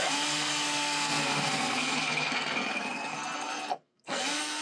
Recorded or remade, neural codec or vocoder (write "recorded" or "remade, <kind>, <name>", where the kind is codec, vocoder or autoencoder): remade, codec, SNAC